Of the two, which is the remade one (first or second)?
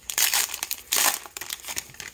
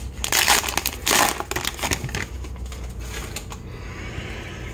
first